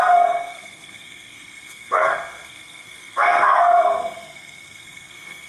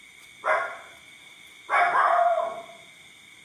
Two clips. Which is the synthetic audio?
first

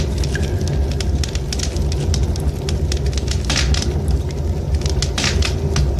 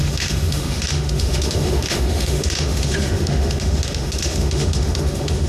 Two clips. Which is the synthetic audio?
second